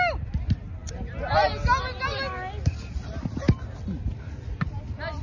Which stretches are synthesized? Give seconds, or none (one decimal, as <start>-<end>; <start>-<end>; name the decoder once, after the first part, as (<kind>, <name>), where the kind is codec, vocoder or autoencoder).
none